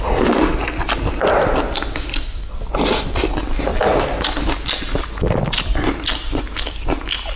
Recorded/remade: recorded